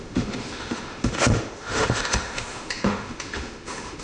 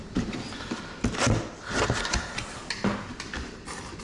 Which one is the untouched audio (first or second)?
second